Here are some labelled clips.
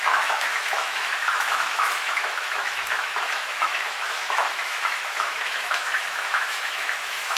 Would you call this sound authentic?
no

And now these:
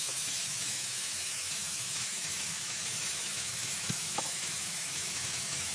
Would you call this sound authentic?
no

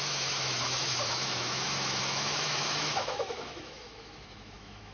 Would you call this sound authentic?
no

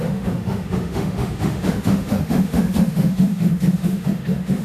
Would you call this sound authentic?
no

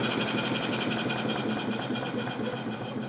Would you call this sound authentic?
yes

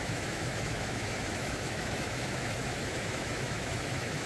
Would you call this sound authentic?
no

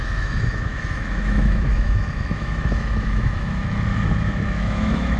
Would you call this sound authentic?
no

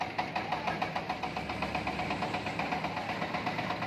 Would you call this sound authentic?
yes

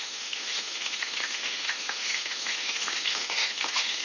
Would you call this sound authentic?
no